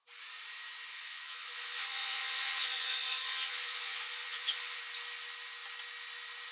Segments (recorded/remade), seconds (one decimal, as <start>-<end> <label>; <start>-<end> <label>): 0.0-0.9 recorded; 0.9-4.8 remade; 4.8-6.5 recorded